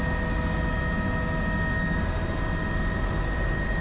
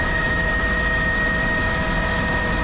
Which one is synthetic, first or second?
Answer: second